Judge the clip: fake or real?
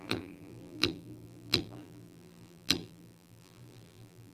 fake